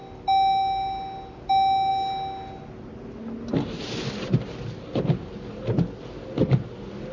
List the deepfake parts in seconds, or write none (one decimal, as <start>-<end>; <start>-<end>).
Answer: none